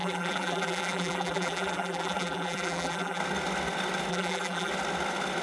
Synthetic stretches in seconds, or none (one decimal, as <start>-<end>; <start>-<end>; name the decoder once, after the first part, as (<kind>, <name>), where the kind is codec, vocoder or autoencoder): 0.0-3.2 (vocoder, BigVGAN v2); 4.1-4.7